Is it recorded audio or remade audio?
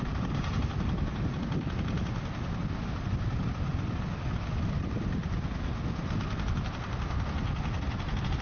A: recorded